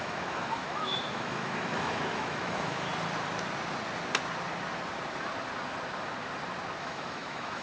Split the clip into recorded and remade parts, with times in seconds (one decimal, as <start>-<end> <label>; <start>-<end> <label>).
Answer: 0.0-2.9 remade; 2.9-6.8 recorded; 6.8-7.6 remade